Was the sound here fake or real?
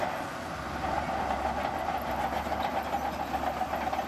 real